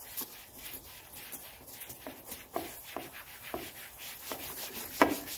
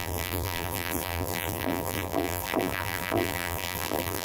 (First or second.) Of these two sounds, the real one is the first